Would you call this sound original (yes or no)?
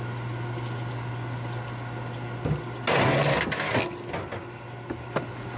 yes